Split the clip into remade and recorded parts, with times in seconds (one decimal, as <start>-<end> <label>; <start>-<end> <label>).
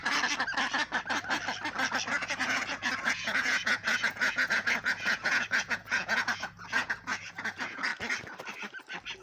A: 0.0-2.1 recorded; 2.1-7.9 remade; 7.9-9.2 recorded